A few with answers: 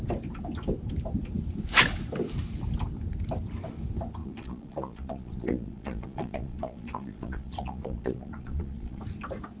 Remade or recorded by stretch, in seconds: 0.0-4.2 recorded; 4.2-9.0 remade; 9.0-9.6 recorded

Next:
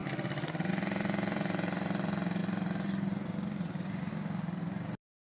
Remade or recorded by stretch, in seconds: 0.0-5.4 remade

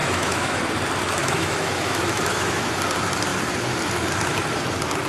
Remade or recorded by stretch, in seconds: 0.0-0.6 remade; 0.6-1.2 recorded; 1.2-2.8 remade; 2.8-5.1 recorded

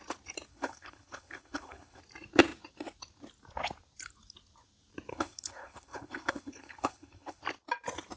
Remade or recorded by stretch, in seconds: 0.0-0.5 recorded; 0.5-2.0 remade; 2.0-5.1 recorded; 5.1-7.4 remade; 7.4-8.2 recorded

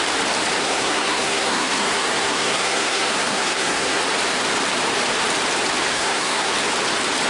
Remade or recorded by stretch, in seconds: 0.0-0.6 recorded; 0.6-4.0 remade; 4.0-5.9 recorded; 5.9-6.5 remade; 6.5-7.3 recorded

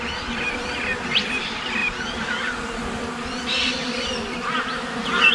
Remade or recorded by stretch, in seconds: 0.0-5.3 recorded

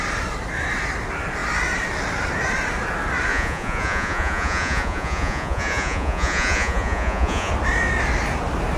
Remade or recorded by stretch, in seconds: 0.0-3.3 recorded; 3.3-7.5 remade; 7.5-8.8 recorded

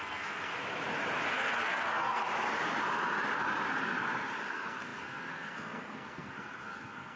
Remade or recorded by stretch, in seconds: 0.0-0.5 remade; 0.5-1.3 recorded; 1.3-2.2 remade; 2.2-4.5 recorded; 4.5-7.2 remade